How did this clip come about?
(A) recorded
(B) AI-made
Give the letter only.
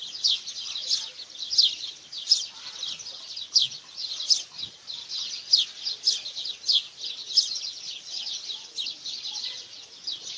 A